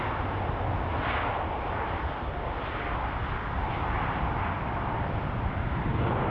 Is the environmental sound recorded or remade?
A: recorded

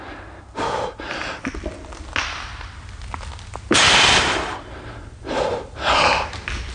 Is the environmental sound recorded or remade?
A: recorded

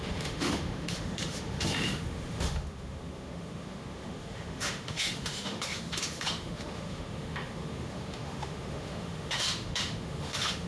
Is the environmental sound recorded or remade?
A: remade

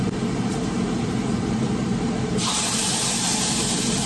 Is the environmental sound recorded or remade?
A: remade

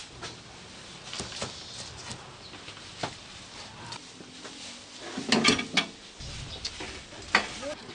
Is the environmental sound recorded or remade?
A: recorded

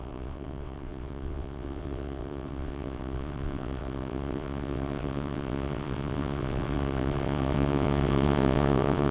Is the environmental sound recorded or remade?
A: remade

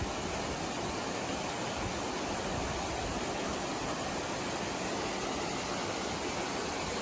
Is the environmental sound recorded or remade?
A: recorded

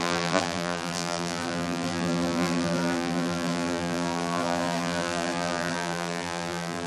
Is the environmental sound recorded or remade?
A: remade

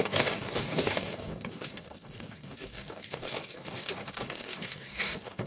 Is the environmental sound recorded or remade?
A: remade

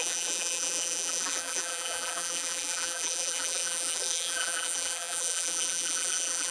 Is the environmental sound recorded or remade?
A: remade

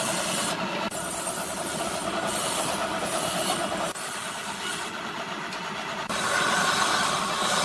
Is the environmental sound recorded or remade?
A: recorded